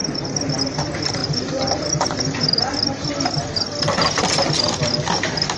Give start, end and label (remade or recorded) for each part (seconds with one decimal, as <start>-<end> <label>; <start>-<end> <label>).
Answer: 0.0-1.2 recorded; 1.2-2.6 remade; 2.6-5.6 recorded